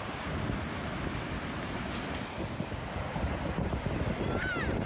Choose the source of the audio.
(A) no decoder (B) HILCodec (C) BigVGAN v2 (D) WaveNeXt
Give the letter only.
A